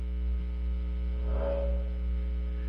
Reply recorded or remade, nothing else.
recorded